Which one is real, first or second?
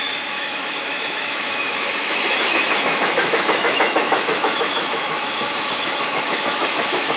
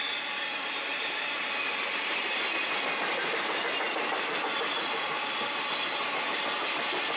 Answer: second